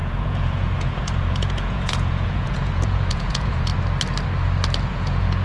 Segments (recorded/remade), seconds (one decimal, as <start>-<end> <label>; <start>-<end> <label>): 0.0-3.7 remade; 3.7-4.8 recorded; 4.8-5.4 remade